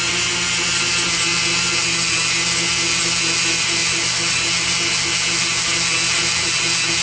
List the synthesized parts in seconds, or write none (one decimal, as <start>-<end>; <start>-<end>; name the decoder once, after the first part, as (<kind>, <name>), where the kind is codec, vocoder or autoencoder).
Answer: none